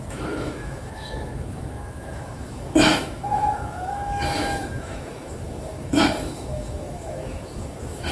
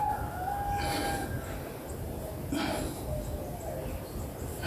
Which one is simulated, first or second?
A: first